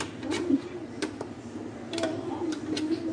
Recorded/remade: recorded